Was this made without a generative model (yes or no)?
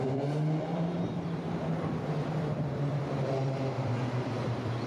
no